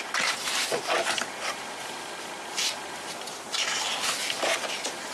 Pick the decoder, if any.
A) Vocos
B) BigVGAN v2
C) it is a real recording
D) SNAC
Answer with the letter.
C